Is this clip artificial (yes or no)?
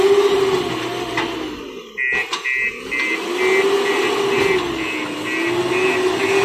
no